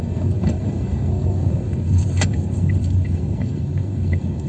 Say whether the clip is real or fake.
fake